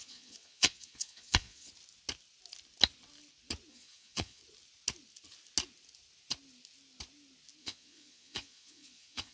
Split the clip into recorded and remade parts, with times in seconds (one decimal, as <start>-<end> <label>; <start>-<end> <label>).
0.0-1.7 remade; 1.7-3.7 recorded; 3.7-4.4 remade; 4.4-7.6 recorded; 7.6-9.3 remade